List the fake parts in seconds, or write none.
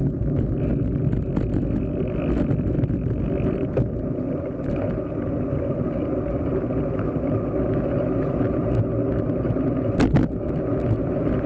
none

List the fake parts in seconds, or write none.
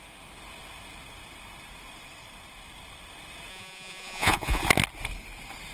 3.5-4.6 (vocoder, Vocos)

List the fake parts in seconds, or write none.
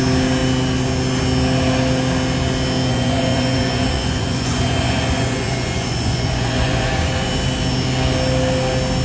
2.9-7.3 (vocoder, Vocos)